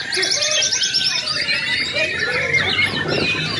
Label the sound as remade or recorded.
recorded